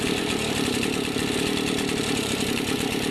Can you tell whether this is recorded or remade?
remade